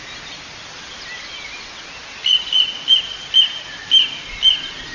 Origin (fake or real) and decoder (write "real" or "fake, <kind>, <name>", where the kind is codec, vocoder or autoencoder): real